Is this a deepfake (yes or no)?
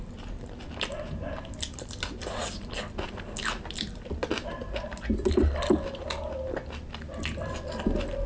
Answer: no